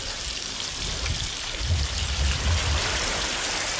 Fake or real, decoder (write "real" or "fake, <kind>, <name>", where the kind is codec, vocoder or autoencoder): fake, vocoder, BigVGAN v2